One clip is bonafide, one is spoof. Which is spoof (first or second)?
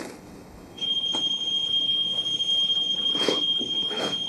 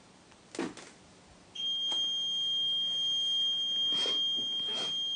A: first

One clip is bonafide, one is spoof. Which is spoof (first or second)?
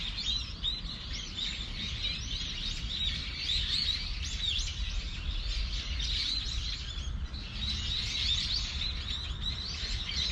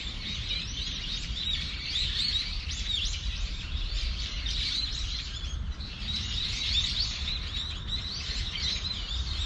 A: second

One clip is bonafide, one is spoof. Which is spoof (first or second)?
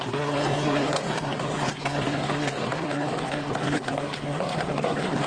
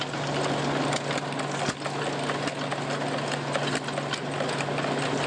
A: first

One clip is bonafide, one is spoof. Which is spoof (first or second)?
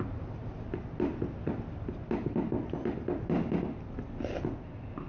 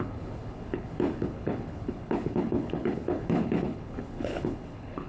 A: second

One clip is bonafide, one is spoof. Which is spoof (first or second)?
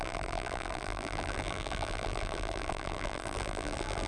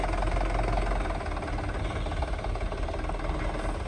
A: first